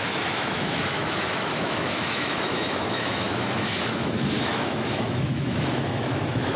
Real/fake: fake